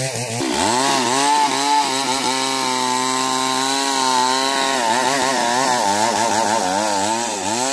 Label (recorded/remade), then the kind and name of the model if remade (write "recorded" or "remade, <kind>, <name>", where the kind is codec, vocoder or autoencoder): recorded